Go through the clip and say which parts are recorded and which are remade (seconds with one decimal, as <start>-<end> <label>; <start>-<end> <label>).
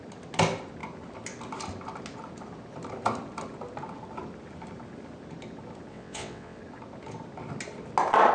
0.0-5.9 recorded; 5.9-6.6 remade; 6.6-8.3 recorded